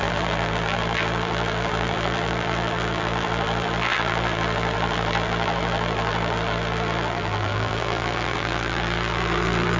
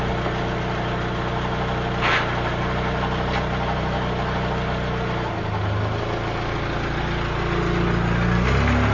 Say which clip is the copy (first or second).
first